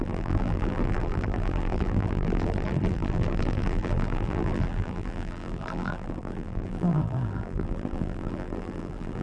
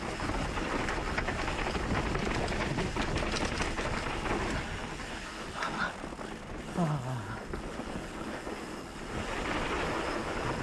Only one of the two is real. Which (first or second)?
second